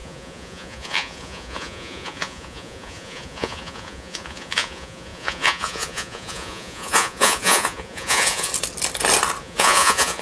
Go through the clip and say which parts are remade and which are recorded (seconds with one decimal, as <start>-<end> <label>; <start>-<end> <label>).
0.0-8.5 remade; 8.5-9.4 recorded; 9.4-10.2 remade